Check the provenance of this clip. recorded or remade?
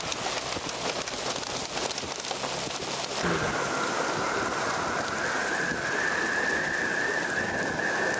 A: recorded